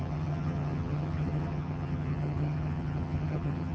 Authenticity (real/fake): fake